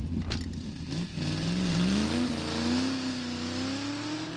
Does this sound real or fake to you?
real